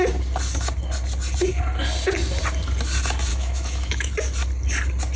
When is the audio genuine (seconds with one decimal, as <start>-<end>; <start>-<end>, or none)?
0.0-3.3; 4.1-5.2